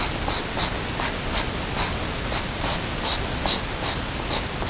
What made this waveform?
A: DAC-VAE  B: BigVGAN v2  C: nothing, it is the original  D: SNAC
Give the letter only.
C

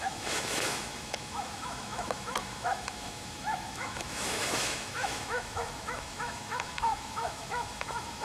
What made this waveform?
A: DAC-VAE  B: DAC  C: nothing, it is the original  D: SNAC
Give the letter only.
A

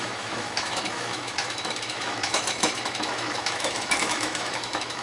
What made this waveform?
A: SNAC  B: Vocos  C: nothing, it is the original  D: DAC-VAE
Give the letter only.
D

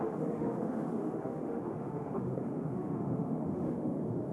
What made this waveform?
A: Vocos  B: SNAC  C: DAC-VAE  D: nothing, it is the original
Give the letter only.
C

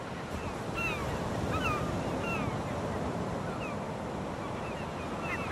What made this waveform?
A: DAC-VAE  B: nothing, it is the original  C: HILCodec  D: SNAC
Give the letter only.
B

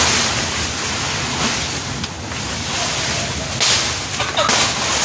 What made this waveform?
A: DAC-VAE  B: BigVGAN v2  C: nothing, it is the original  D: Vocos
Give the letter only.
C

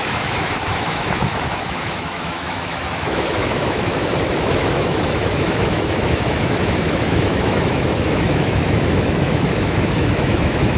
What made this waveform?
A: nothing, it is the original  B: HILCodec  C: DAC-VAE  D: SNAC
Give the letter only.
C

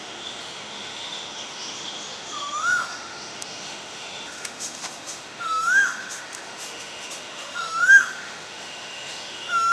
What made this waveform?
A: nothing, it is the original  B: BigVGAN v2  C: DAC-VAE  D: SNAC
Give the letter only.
C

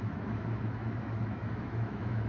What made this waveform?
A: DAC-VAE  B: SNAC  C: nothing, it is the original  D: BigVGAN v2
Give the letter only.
A